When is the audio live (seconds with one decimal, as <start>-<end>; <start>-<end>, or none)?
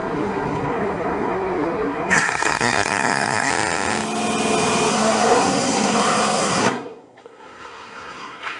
3.5-4.9